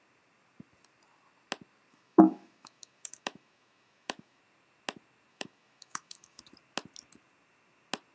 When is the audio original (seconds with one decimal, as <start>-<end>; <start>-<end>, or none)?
0.0-1.9; 4.4-5.3; 6.4-8.1